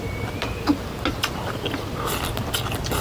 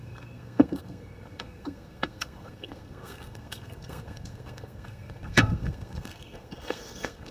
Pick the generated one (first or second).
second